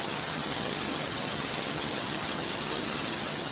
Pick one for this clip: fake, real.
fake